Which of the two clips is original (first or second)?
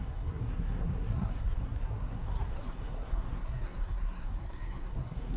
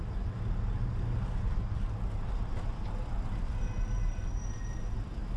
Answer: second